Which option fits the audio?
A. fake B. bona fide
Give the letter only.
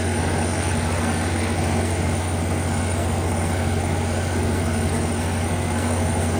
A